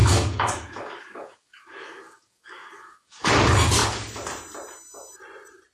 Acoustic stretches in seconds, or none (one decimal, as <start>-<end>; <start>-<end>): 3.3-5.7

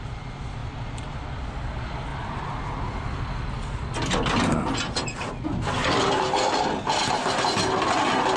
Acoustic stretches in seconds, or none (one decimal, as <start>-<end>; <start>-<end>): 0.0-8.4

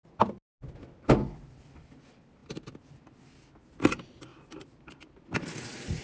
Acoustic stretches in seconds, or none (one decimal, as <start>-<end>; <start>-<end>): 0.0-6.0

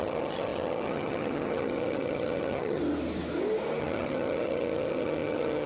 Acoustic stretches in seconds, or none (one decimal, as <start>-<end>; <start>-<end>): 2.8-3.8

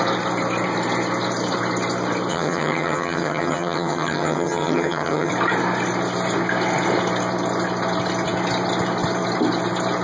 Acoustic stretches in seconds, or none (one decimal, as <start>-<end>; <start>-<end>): 0.0-2.3; 5.3-10.0

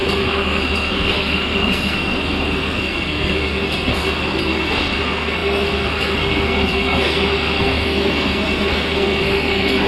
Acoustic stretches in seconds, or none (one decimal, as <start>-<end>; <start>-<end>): none

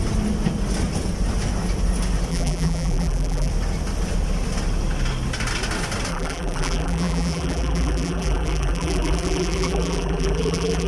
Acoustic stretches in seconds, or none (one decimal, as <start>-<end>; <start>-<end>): 0.0-2.3; 3.5-6.1

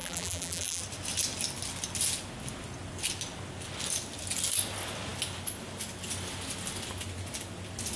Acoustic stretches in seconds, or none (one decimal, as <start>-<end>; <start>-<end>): 0.8-8.0